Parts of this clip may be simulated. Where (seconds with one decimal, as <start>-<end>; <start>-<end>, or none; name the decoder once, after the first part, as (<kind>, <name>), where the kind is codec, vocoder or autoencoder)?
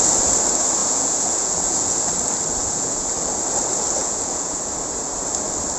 0.8-2.0 (vocoder, Vocos); 2.6-3.1; 4.0-4.6